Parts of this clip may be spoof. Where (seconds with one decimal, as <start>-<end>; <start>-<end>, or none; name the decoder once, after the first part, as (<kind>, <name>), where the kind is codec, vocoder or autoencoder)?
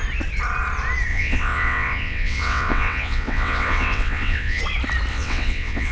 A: 1.1-4.6 (vocoder, WaveNeXt); 5.1-5.9